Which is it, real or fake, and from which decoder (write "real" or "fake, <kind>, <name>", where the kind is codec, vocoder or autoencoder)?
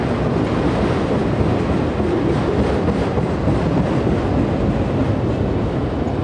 real